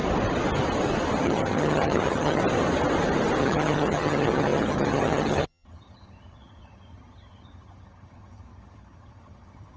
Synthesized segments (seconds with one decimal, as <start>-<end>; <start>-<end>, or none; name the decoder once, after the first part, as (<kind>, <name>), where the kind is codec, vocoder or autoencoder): 1.2-2.4 (vocoder, HiFi-GAN); 3.4-9.8